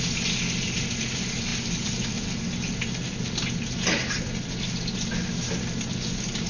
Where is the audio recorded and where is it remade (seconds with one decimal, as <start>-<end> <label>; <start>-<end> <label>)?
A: 0.0-6.5 recorded